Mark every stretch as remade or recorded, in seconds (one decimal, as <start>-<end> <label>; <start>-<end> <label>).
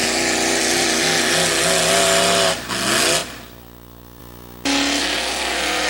0.0-5.0 recorded; 5.0-5.9 remade